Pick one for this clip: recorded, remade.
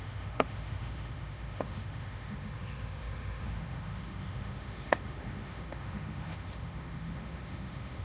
remade